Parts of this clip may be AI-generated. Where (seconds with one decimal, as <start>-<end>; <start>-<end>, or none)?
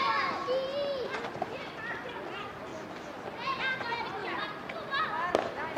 none